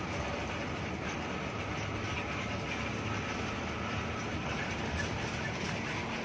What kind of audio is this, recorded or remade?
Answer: recorded